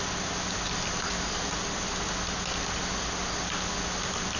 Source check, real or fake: real